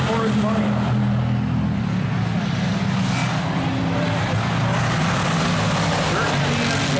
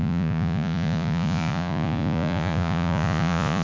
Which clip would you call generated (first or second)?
second